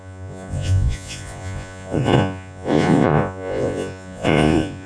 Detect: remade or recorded remade